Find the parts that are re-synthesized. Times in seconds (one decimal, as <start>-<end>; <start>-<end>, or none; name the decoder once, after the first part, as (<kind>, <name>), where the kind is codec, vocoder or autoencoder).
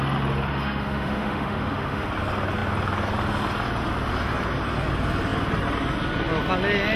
0.5-2.1 (autoencoder, DAC-VAE)